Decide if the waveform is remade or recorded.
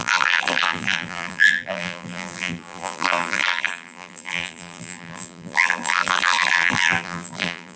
remade